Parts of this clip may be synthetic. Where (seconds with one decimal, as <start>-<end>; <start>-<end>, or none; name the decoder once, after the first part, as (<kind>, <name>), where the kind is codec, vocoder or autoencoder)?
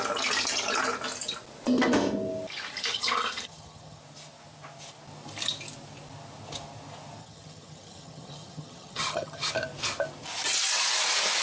2.9-4.0 (vocoder, HiFi-GAN); 7.2-9.5